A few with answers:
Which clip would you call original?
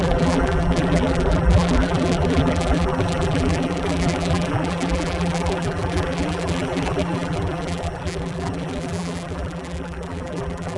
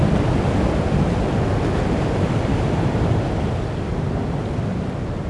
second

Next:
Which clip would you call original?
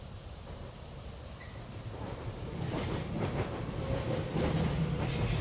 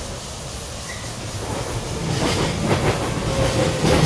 second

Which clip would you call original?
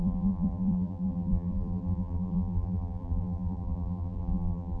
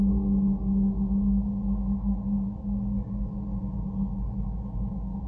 second